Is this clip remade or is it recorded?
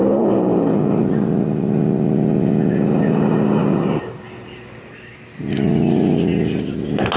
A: recorded